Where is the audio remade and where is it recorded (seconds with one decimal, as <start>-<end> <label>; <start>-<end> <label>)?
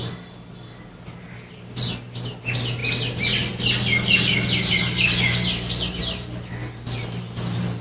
0.0-7.8 recorded